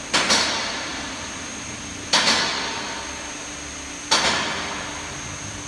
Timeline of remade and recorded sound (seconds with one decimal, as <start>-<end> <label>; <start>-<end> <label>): 0.0-0.9 recorded; 0.9-2.5 remade; 2.5-5.7 recorded